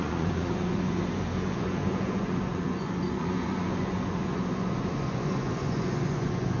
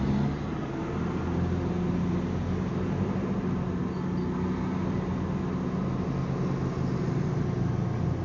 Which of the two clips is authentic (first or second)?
second